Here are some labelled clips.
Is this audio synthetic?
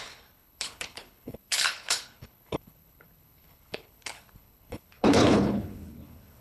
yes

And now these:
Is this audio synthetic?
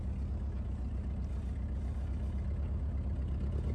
no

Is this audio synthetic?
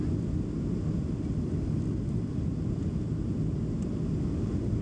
no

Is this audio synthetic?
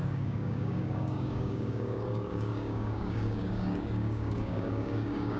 yes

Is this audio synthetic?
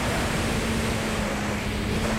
no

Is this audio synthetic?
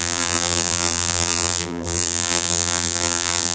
yes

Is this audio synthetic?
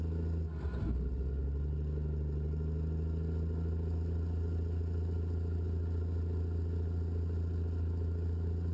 no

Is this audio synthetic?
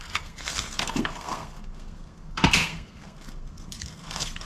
yes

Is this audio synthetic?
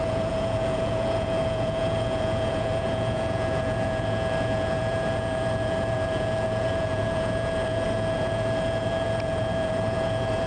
yes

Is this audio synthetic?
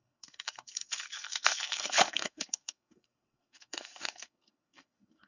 yes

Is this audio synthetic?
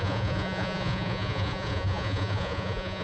yes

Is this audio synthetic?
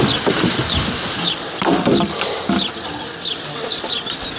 no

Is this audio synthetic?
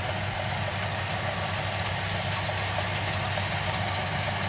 no